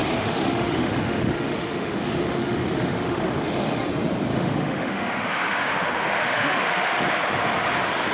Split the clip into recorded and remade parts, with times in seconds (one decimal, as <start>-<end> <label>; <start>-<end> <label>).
0.0-3.9 remade; 3.9-4.3 recorded; 4.3-6.9 remade; 6.9-8.1 recorded